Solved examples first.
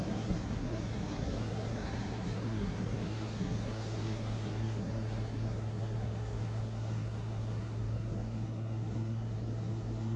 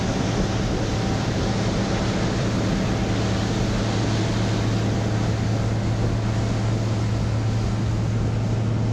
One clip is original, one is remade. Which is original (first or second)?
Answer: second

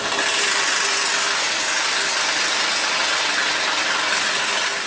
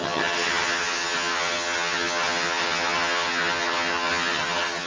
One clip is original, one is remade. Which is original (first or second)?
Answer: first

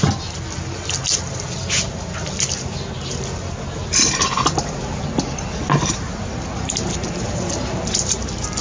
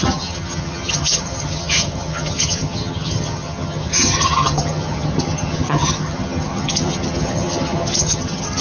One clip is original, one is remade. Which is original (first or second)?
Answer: first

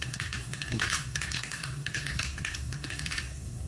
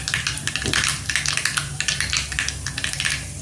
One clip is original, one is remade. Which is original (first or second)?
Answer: second